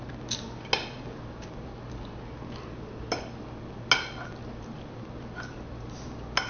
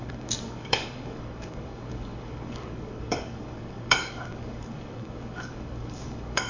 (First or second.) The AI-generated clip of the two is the second